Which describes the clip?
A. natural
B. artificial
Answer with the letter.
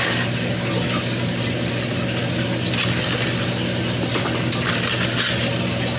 A